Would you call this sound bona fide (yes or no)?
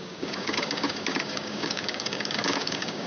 no